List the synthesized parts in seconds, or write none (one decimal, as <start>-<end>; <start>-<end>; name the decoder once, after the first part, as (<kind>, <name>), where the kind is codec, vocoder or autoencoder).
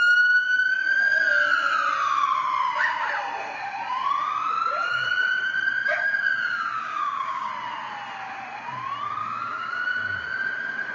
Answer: 6.3-7.5 (codec, DAC); 9.2-9.8